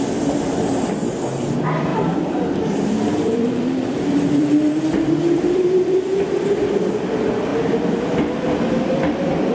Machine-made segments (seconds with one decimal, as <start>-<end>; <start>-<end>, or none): 1.9-6.7